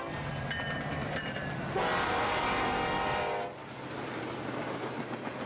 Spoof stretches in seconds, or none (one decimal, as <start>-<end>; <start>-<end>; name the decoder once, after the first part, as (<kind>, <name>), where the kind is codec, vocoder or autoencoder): 1.9-3.2 (vocoder, BigVGAN v2)